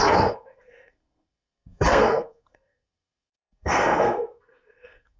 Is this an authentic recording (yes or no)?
no